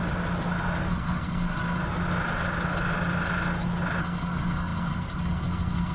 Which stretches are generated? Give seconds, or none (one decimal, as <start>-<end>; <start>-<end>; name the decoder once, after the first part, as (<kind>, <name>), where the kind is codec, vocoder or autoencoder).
0.9-1.8 (codec, SNAC); 4.0-5.9